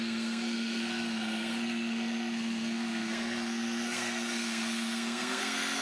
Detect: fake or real fake